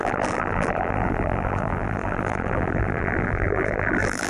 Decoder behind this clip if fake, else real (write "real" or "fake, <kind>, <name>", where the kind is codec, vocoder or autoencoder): fake, vocoder, BigVGAN v2